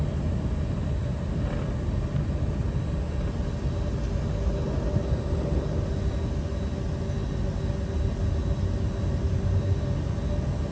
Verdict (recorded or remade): recorded